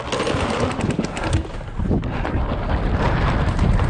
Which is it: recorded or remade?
recorded